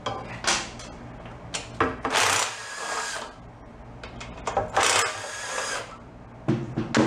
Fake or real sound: real